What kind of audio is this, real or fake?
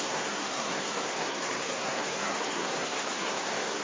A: fake